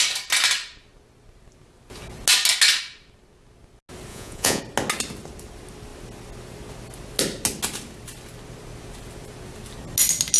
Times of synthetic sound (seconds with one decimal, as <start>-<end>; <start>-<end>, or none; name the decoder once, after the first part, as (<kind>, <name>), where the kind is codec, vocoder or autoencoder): 4.1-4.6 (vocoder, Vocos)